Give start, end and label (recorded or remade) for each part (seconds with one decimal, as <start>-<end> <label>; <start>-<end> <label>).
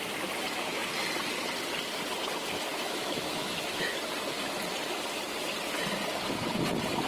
0.0-2.7 recorded; 2.7-4.0 remade; 4.0-7.1 recorded